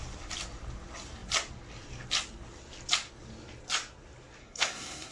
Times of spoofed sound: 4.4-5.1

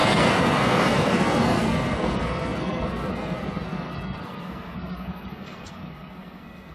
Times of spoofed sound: 0.0-6.7